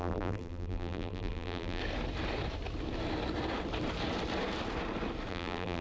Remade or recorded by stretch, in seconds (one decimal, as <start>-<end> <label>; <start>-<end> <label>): 0.0-1.8 remade; 1.8-5.3 recorded; 5.3-5.8 remade